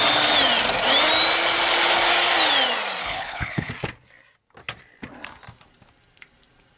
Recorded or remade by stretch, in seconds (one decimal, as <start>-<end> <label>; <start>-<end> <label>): 0.0-3.0 recorded; 3.0-3.7 remade; 3.7-6.8 recorded